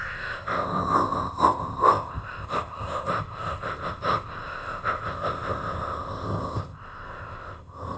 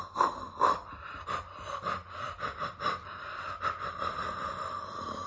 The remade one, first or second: first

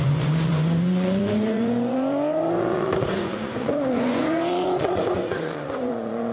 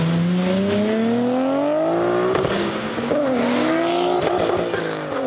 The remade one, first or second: first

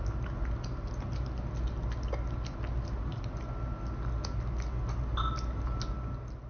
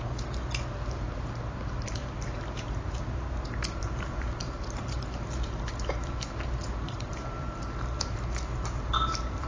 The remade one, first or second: second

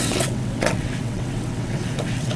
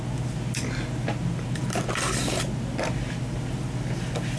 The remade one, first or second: first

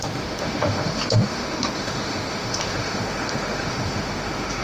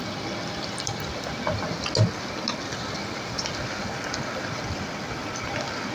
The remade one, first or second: first